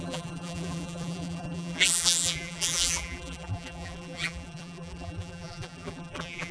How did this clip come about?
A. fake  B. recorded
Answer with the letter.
A